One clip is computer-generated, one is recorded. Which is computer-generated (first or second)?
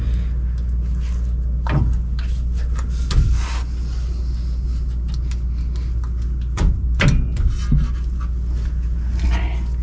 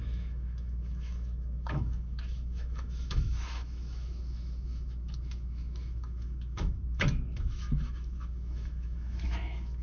second